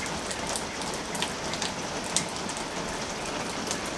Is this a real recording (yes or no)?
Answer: yes